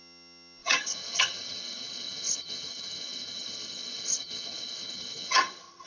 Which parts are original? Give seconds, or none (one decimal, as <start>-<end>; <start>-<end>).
none